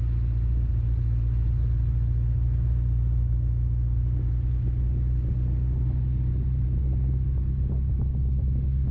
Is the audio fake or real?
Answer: real